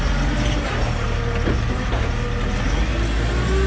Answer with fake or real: real